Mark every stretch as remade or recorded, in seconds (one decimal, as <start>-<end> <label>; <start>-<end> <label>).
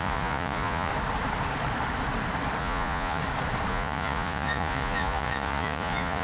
0.0-0.9 remade; 0.9-2.6 recorded; 2.6-3.2 remade; 3.2-3.7 recorded; 3.7-6.2 remade